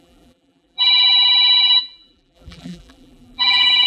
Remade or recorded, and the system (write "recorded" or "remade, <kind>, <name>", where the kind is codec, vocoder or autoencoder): remade, vocoder, BigVGAN v2